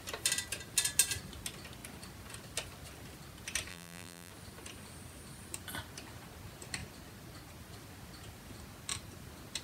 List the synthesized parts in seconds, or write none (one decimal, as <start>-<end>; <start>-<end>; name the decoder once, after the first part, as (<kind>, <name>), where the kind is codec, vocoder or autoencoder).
3.7-4.3 (vocoder, BigVGAN v2)